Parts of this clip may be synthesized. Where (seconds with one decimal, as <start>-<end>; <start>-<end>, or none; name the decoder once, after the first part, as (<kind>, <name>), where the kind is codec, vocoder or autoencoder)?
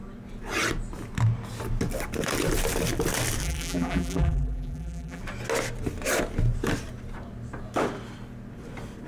3.4-5.2 (vocoder, BigVGAN v2)